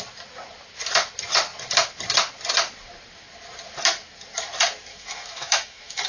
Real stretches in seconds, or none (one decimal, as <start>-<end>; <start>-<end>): 0.0-4.9